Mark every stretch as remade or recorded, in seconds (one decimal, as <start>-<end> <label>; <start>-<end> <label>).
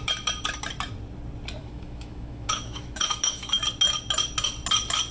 0.0-1.6 recorded; 1.6-3.6 remade; 3.6-5.1 recorded